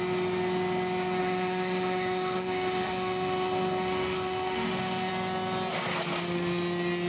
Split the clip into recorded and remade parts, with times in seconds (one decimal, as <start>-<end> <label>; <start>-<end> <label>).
0.0-1.2 recorded; 1.2-5.1 remade; 5.1-7.1 recorded